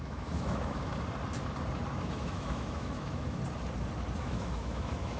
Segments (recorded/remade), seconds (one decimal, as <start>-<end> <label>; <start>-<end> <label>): 0.0-0.9 remade; 0.9-1.9 recorded; 1.9-3.4 remade; 3.4-4.2 recorded; 4.2-5.2 remade